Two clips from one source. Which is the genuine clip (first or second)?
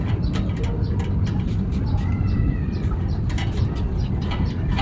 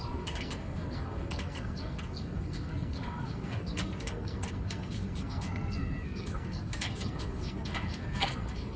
first